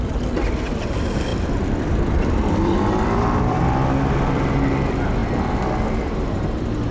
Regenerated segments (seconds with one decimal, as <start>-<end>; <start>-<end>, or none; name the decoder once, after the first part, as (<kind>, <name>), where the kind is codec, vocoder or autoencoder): 0.0-6.9 (vocoder, BigVGAN v2)